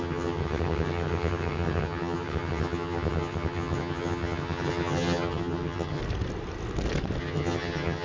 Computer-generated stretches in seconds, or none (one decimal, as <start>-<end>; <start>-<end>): 0.0-6.0; 7.2-8.0